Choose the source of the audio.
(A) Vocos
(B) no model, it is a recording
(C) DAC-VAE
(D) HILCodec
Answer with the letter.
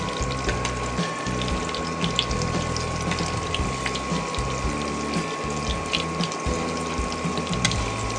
B